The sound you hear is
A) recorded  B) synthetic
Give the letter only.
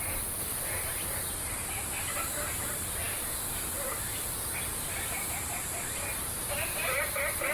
B